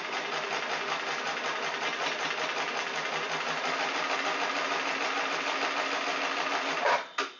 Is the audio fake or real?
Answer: real